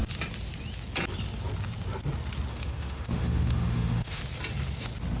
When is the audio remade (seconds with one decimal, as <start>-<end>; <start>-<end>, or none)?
2.5-4.2